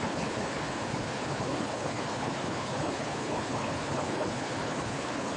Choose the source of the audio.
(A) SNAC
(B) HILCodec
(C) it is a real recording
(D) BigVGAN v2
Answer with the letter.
B